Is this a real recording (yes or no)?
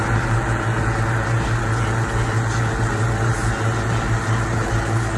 yes